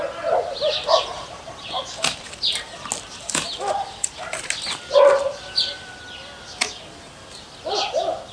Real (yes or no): yes